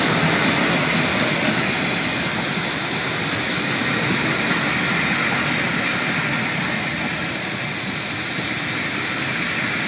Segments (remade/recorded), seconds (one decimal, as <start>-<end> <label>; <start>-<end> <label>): 0.0-1.1 recorded; 1.1-1.7 remade; 1.7-9.9 recorded